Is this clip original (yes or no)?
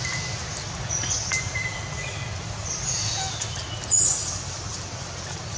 yes